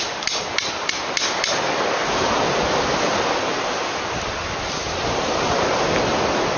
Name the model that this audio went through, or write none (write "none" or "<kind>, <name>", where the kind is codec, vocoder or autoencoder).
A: none